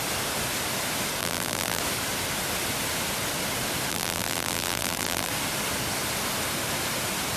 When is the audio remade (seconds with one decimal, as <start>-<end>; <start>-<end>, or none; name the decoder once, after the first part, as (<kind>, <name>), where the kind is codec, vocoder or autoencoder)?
1.2-1.8 (vocoder, BigVGAN v2); 3.9-5.3